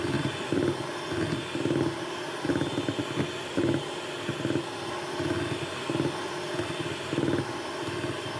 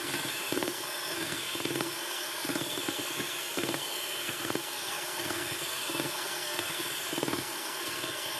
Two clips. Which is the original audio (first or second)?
first